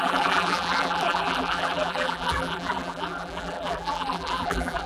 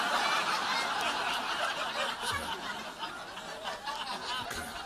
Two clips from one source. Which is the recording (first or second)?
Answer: second